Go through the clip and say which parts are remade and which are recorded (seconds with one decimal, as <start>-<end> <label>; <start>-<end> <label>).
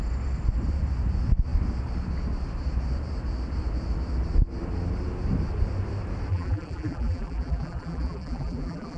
0.0-6.3 recorded; 6.3-9.0 remade